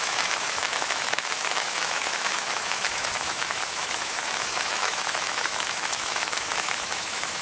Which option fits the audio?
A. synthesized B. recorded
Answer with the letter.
A